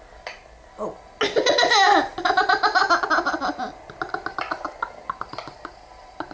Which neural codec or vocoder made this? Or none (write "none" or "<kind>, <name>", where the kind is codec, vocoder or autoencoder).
none